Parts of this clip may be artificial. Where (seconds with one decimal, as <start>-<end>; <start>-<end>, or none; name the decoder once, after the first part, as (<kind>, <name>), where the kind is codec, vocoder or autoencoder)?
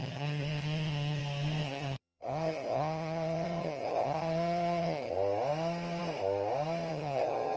0.0-1.2 (vocoder, HiFi-GAN); 1.6-5.1; 6.9-7.6